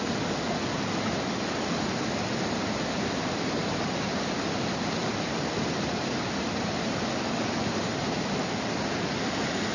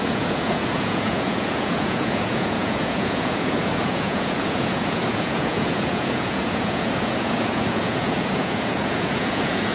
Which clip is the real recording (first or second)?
first